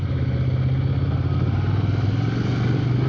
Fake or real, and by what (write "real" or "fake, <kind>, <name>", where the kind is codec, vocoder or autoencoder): real